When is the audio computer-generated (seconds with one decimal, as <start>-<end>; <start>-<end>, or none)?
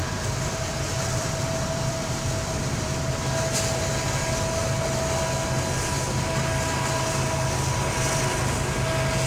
0.0-2.7